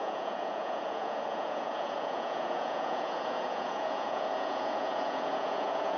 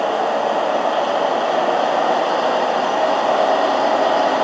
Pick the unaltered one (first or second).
second